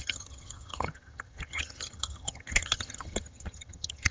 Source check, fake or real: fake